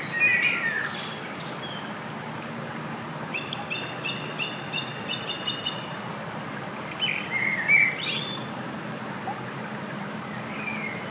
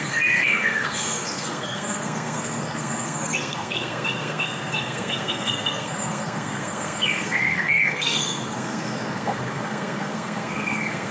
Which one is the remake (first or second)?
second